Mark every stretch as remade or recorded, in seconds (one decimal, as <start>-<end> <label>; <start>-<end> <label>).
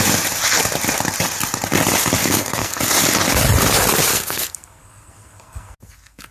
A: 0.0-2.2 recorded; 2.2-2.8 remade; 2.8-4.1 recorded; 4.1-6.3 remade